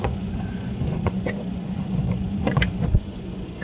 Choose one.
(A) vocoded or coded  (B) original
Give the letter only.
A